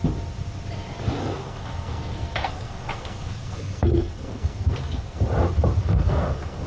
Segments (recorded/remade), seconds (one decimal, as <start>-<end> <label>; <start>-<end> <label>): 0.0-1.2 recorded; 1.2-5.2 remade; 5.2-5.8 recorded; 5.8-6.7 remade